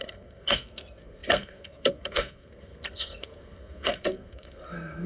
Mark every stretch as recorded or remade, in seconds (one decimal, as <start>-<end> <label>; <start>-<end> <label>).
0.0-5.1 remade